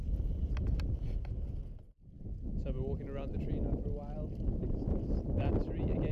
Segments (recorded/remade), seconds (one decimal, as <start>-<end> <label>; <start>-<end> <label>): 0.0-6.1 recorded